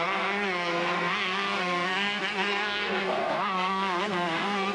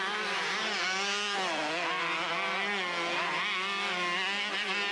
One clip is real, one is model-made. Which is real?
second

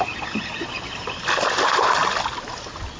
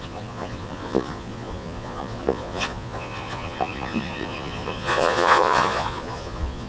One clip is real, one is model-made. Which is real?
first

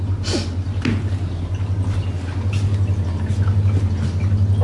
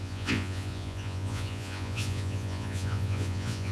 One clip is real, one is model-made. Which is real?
first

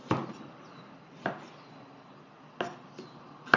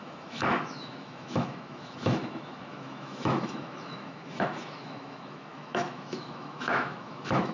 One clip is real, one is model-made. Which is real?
first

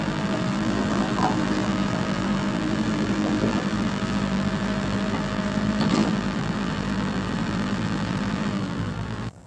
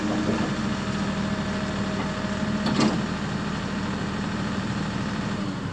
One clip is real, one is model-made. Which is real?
second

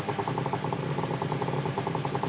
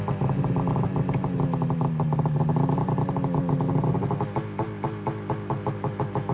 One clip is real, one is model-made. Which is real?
second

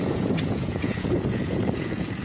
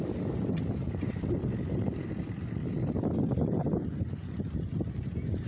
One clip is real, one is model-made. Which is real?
second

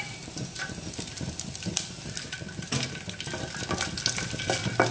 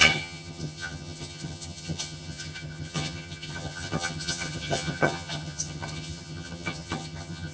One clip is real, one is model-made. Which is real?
first